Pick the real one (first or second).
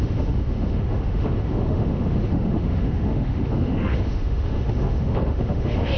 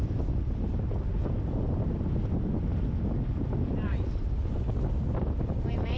second